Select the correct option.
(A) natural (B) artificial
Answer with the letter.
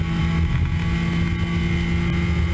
A